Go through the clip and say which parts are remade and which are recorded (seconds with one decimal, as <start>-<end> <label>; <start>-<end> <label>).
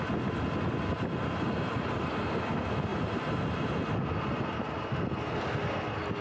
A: 0.0-2.9 recorded; 2.9-3.7 remade; 3.7-6.2 recorded